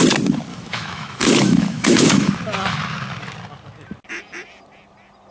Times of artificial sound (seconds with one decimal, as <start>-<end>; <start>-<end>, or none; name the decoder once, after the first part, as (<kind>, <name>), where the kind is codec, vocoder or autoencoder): 0.5-2.3 (autoencoder, DAC-VAE)